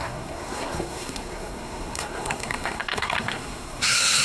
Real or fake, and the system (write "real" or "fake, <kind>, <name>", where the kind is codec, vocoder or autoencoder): fake, codec, SNAC